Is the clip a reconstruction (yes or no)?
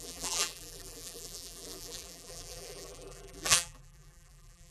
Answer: yes